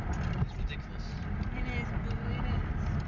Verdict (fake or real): real